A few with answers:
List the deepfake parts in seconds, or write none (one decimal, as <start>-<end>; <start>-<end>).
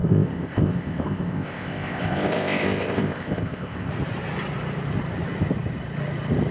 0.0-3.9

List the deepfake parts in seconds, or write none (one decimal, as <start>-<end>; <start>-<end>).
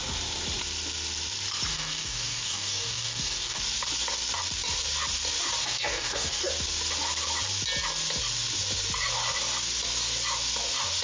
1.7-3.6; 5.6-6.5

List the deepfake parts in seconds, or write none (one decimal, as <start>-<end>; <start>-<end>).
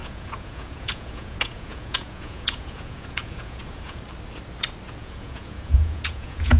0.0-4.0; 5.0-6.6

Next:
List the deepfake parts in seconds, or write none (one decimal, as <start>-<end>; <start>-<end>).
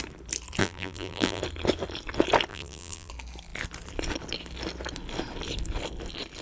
0.6-1.4; 2.5-3.1